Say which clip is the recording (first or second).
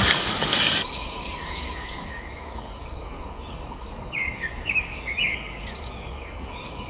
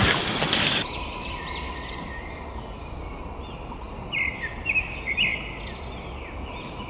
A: second